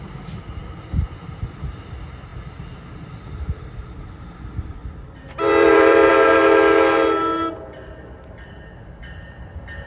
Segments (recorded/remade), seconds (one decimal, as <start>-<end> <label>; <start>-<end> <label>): 0.0-0.6 recorded; 0.6-1.3 remade; 1.3-4.8 recorded; 4.8-6.1 remade; 6.1-9.9 recorded

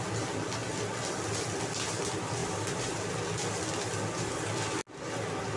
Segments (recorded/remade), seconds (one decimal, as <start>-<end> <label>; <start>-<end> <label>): 0.0-2.4 recorded; 2.4-3.1 remade; 3.1-5.6 recorded

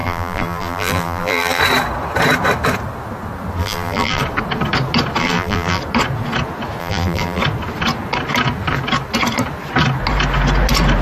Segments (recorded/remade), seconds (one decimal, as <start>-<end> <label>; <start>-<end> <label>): 0.0-1.6 remade; 1.6-3.6 recorded; 3.6-4.2 remade; 4.2-5.2 recorded; 5.2-5.8 remade; 5.8-6.8 recorded; 6.8-7.4 remade; 7.4-11.0 recorded

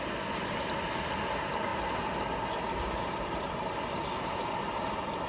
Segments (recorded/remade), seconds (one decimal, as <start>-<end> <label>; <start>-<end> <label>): 0.0-5.3 recorded

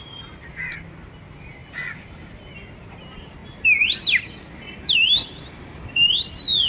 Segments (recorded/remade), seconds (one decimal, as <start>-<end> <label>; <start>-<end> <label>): 0.0-0.7 remade; 0.7-1.6 recorded; 1.6-2.5 remade; 2.5-6.7 recorded

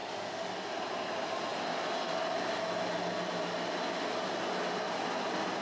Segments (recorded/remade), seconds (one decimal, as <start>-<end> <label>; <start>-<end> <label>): 0.0-5.6 recorded

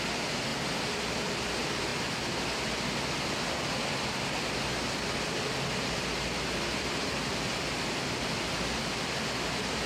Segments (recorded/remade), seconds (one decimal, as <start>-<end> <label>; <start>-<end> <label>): 0.0-9.9 recorded

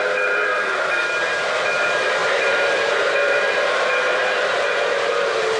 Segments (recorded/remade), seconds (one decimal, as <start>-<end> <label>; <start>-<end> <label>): 0.0-2.2 recorded; 2.2-5.6 remade